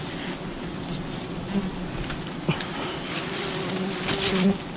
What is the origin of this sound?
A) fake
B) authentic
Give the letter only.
B